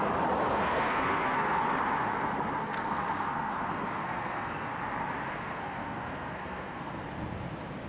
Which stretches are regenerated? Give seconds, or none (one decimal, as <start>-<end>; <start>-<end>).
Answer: 0.5-1.6; 2.6-4.7; 5.3-7.0